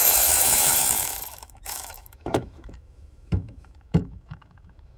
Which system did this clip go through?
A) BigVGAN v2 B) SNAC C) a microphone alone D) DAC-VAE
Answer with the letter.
D